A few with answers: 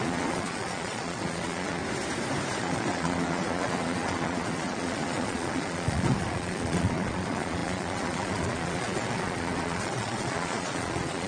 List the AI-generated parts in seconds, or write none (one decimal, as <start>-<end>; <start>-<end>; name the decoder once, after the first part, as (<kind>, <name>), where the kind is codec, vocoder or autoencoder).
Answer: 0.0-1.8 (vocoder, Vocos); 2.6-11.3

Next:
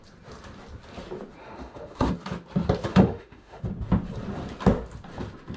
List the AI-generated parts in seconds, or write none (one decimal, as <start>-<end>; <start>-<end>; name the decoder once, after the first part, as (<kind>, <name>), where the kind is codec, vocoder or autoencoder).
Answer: 1.4-2.1 (autoencoder, DAC-VAE); 2.9-3.6

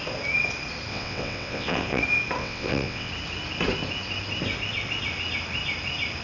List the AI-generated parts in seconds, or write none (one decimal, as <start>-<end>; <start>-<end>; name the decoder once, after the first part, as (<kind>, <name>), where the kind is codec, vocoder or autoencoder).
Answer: 0.9-2.0 (vocoder, WaveNeXt); 2.4-3.1